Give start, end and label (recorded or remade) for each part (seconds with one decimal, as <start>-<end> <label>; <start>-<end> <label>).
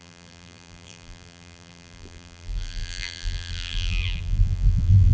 0.0-5.1 remade